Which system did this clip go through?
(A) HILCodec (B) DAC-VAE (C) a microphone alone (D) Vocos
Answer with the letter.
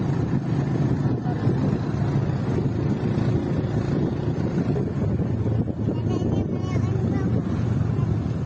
C